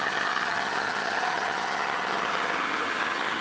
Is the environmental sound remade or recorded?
remade